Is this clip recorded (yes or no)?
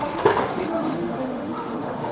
no